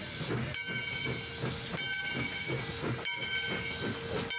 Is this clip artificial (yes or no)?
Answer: no